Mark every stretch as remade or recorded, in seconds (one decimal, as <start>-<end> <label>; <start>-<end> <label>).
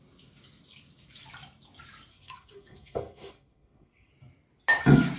0.0-2.1 recorded; 2.1-4.1 remade; 4.1-5.2 recorded